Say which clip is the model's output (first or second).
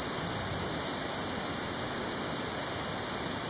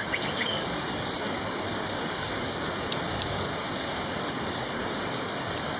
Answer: second